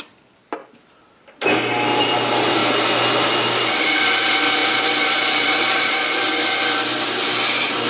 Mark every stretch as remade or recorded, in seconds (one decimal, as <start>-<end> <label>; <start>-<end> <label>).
0.0-0.6 remade; 0.6-2.0 recorded; 2.0-2.6 remade; 2.6-3.8 recorded; 3.8-7.9 remade